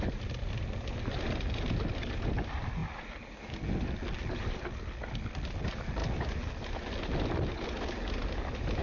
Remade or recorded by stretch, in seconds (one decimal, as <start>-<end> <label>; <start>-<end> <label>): 0.0-8.8 recorded